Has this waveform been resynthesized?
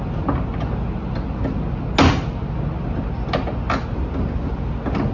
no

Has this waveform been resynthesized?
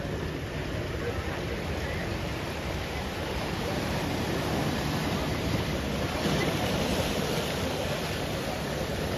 no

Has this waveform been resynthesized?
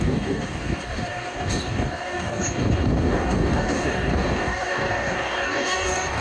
yes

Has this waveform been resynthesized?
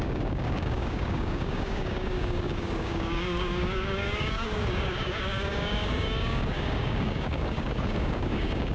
yes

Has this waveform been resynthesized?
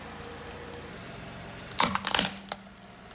no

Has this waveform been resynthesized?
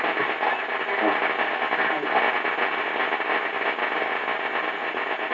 no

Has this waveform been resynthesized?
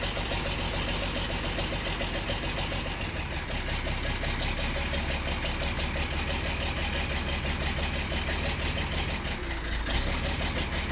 no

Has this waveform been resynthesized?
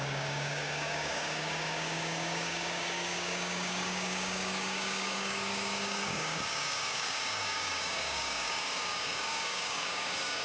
yes